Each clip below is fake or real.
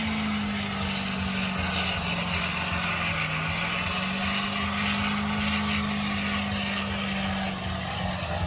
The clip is real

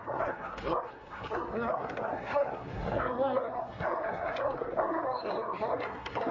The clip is fake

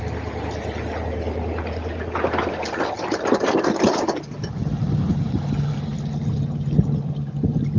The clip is real